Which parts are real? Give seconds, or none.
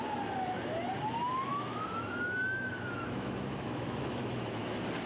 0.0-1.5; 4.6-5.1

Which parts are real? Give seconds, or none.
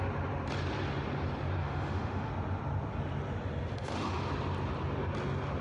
0.0-1.6; 2.3-3.7; 4.3-5.6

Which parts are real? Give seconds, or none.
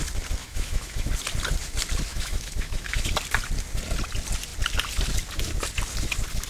0.0-0.4; 1.1-2.1; 3.1-6.5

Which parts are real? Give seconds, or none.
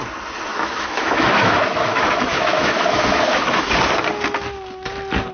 0.0-0.5; 3.7-5.3